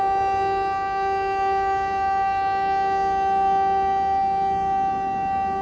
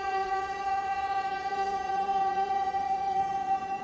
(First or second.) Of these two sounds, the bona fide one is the first